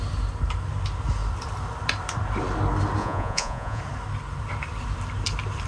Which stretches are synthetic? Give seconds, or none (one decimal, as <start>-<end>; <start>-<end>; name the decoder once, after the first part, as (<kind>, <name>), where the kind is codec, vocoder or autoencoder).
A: 3.0-3.8 (vocoder, Vocos)